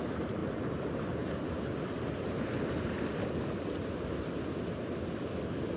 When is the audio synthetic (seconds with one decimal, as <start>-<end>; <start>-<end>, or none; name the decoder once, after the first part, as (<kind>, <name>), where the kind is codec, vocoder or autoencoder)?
none